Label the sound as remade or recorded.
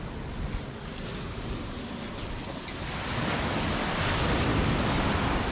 recorded